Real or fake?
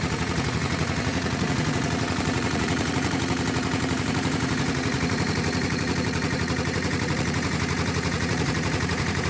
fake